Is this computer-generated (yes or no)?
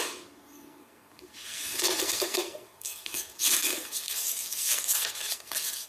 yes